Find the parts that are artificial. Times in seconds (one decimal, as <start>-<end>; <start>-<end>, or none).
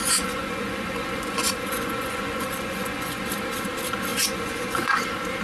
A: 0.0-3.2; 4.1-5.0